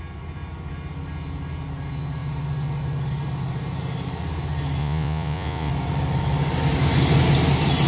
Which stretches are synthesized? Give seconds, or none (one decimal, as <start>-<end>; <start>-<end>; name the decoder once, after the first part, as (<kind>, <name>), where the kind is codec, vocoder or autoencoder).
4.8-5.7 (vocoder, Vocos)